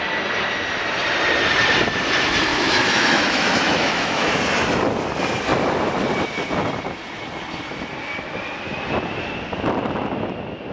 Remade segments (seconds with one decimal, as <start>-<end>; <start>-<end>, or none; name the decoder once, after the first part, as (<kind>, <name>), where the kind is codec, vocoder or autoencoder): 2.5-4.3 (autoencoder, DAC-VAE)